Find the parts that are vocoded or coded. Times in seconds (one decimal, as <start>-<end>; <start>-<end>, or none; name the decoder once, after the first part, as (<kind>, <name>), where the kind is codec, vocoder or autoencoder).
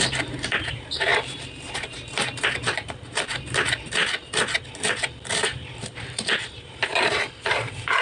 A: 0.0-4.0 (vocoder, BigVGAN v2); 5.3-8.0